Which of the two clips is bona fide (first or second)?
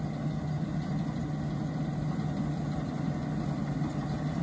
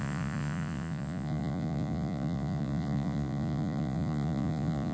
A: first